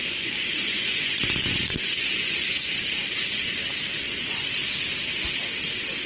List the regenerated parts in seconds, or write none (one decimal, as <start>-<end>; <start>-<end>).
0.0-2.7; 3.9-4.5